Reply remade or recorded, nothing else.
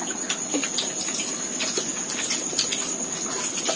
recorded